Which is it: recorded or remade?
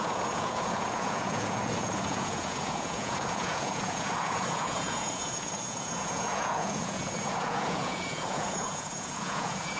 remade